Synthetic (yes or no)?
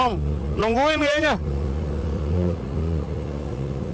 yes